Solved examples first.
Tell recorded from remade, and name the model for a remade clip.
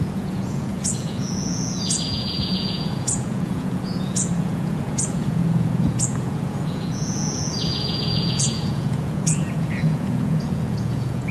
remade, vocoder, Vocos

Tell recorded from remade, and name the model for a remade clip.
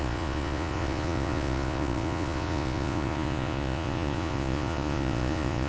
remade, vocoder, Vocos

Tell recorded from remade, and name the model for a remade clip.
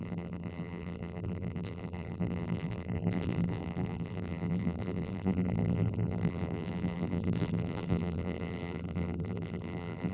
remade, vocoder, BigVGAN v2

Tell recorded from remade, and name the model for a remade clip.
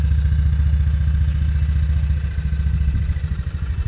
recorded